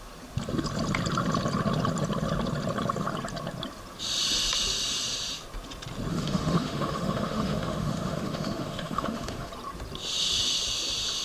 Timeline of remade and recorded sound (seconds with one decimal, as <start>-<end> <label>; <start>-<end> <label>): 0.0-6.1 recorded; 6.1-9.5 remade; 9.5-11.2 recorded